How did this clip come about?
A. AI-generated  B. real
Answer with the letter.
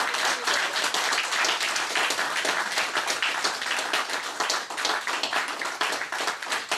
B